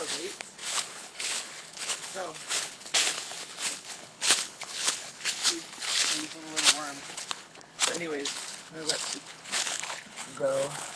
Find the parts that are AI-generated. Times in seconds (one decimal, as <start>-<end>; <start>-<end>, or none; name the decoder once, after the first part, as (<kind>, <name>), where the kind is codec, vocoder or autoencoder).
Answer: 0.0-6.3 (codec, HILCodec); 7.0-11.0

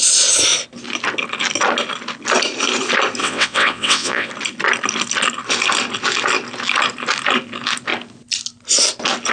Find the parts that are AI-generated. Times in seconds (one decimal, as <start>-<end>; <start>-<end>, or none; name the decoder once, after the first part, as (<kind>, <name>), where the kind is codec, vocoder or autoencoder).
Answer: 3.2-4.3 (vocoder, WaveNeXt)

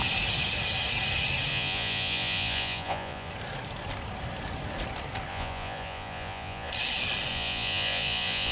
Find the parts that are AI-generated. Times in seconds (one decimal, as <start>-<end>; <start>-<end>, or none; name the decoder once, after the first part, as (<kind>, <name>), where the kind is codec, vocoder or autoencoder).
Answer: 1.5-3.3 (vocoder, Vocos); 5.3-6.7; 7.3-8.5

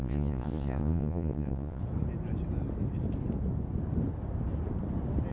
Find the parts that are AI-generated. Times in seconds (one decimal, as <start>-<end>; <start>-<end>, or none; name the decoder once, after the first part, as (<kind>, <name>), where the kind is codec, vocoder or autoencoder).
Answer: 0.0-1.8 (vocoder, Vocos)

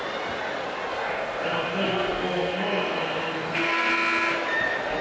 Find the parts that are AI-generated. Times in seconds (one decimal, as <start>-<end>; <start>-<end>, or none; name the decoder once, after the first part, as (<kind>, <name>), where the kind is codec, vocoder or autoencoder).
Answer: 0.9-3.9 (codec, SNAC)

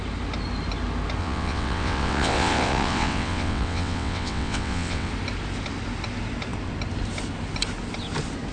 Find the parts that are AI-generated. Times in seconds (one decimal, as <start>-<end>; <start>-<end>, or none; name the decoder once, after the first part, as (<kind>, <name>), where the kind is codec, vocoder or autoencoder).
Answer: 1.2-5.1 (vocoder, WaveNeXt)

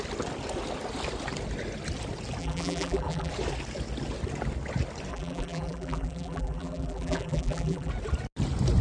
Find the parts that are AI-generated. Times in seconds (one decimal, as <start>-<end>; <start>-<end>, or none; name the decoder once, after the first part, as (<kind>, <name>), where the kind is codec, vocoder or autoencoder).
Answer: 2.4-3.3 (vocoder, BigVGAN v2); 5.1-7.9